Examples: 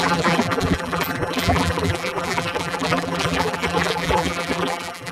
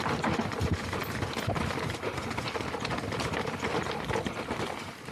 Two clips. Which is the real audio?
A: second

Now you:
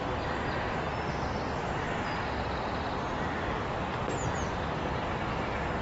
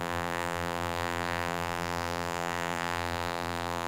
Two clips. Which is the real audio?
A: first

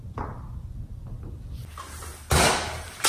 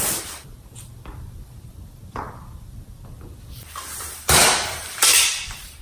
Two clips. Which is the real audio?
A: first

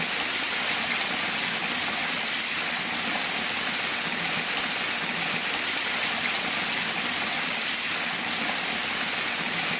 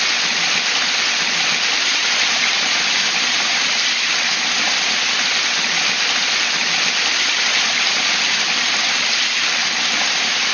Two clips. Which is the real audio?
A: first